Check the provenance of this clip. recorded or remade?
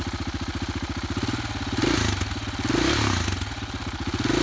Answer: recorded